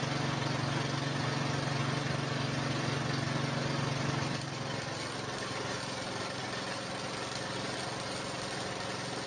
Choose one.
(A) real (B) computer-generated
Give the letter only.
A